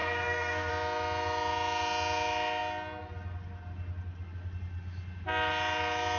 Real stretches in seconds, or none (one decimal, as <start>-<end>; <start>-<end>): 0.7-6.2